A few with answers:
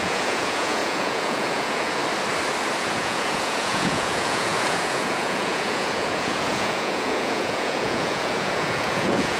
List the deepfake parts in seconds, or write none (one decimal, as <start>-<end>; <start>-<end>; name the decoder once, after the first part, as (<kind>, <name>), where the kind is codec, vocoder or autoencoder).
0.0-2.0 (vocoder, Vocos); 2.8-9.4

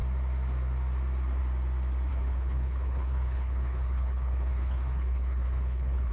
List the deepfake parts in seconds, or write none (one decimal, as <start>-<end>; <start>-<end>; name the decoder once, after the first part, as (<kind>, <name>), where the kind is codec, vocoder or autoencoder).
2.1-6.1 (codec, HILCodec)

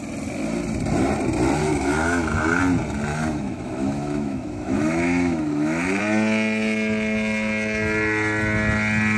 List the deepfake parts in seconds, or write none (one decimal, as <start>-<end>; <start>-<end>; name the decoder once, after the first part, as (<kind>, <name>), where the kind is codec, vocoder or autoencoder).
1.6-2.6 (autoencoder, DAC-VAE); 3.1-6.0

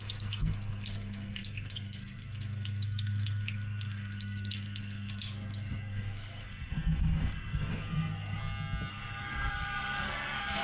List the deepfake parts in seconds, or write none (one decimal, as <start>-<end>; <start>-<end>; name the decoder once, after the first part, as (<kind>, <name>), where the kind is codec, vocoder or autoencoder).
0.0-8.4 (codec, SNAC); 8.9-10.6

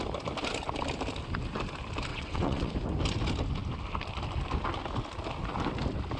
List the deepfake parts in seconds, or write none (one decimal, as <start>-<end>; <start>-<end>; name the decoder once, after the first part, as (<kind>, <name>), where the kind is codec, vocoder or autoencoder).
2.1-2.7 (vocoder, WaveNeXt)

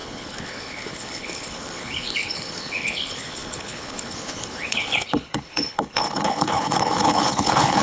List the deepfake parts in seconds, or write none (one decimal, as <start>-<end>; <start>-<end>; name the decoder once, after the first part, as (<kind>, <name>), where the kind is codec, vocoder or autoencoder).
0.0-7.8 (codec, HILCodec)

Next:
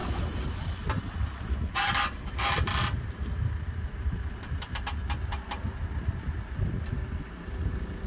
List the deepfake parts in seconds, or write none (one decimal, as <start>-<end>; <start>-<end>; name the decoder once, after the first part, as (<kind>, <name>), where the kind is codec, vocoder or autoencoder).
none